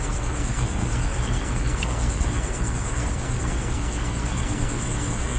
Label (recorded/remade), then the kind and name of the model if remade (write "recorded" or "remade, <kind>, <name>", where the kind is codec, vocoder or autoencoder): remade, codec, SNAC